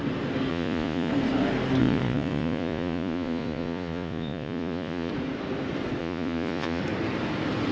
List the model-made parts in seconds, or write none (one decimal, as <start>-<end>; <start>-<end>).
0.5-1.1; 1.8-5.1; 6.0-6.8